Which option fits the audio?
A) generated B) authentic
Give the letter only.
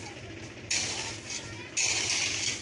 B